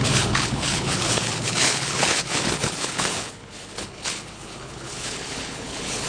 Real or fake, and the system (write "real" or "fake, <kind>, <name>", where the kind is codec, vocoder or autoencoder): fake, codec, HILCodec